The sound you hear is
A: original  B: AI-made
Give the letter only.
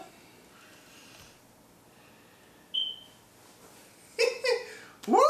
A